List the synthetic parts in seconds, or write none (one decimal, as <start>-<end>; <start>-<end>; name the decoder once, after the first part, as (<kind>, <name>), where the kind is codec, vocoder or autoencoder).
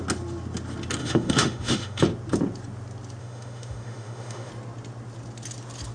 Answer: 1.0-2.0 (autoencoder, DAC-VAE); 3.2-4.5